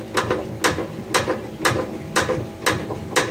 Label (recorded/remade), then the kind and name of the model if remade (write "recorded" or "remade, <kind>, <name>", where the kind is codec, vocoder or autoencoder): recorded